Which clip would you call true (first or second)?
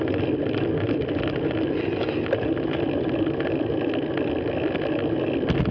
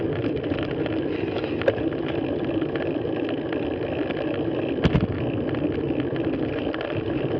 first